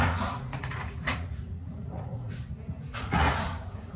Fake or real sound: fake